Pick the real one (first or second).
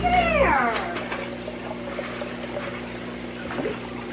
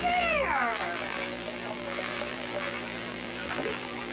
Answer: first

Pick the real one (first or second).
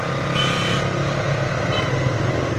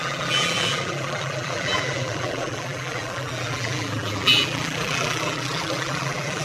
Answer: first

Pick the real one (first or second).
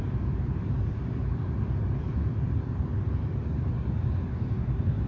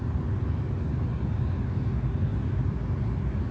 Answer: second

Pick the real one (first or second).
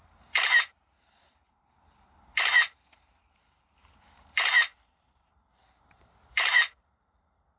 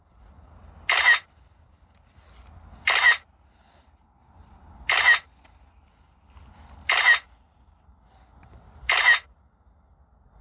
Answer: second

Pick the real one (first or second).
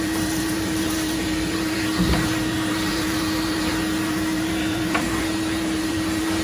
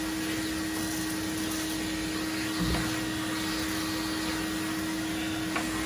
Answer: second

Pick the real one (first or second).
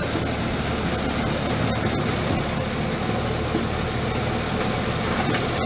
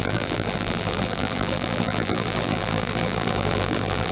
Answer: first